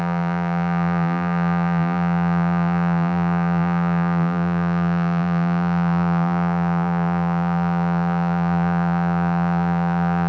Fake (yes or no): yes